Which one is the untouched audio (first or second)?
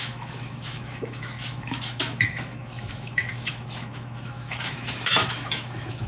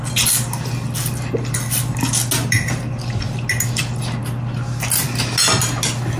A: second